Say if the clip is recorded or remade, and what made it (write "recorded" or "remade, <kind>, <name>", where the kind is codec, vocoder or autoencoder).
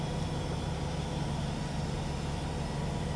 recorded